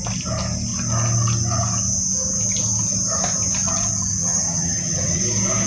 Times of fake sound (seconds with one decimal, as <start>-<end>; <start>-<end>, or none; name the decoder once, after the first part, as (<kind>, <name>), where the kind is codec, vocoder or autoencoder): 4.2-5.2 (vocoder, HiFi-GAN)